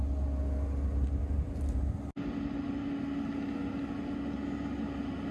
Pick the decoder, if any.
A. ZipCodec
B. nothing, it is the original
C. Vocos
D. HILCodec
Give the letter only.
B